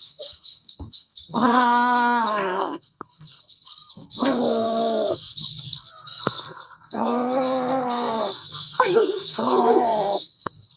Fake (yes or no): yes